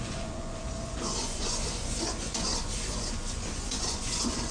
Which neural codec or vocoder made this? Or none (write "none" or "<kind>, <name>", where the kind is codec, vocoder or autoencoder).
vocoder, Vocos